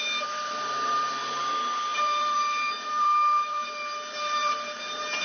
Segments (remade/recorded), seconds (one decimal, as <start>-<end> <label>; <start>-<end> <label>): 0.0-1.1 remade; 1.1-1.9 recorded; 1.9-5.2 remade